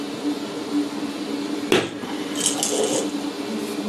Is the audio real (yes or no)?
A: yes